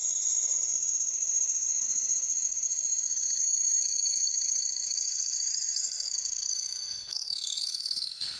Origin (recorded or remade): remade